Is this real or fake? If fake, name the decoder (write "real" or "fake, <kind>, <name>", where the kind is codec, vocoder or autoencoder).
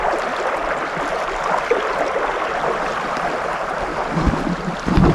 real